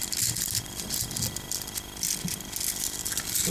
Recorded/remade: recorded